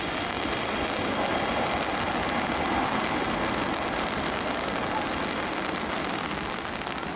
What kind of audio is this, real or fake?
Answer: real